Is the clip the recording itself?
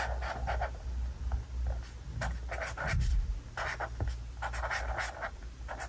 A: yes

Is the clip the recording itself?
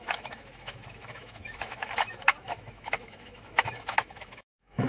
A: no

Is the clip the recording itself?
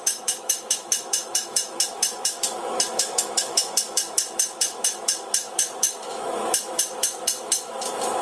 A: no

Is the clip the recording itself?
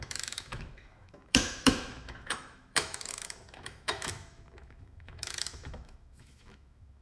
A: no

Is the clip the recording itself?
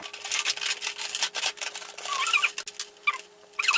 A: yes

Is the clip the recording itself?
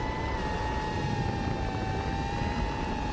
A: yes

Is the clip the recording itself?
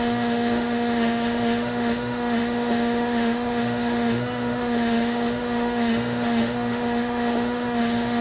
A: no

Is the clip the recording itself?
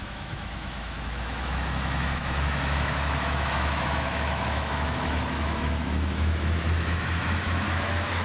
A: no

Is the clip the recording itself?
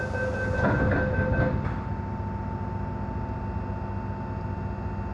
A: yes